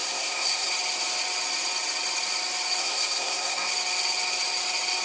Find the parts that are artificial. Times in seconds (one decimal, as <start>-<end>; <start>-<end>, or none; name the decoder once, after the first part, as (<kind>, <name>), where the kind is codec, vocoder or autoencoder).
0.0-0.7 (codec, SNAC); 2.8-3.7